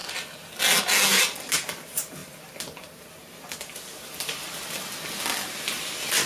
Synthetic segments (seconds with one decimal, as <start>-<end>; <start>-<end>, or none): none

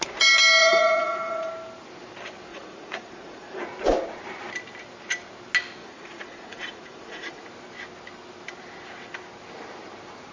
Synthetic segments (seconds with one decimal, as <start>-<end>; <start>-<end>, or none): 0.6-1.5; 2.5-3.6; 5.8-7.4

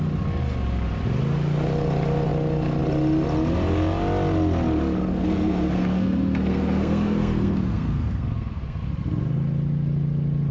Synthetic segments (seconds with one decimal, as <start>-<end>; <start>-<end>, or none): 5.1-8.9

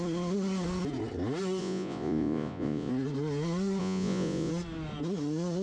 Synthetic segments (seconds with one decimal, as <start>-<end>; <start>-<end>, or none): 1.6-2.9; 3.8-4.5

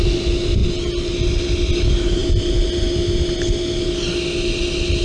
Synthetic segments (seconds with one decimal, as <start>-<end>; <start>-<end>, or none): none

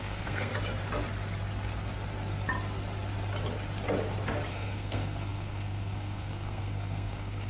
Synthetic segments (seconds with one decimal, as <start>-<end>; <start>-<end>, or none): 0.0-0.5; 4.5-7.5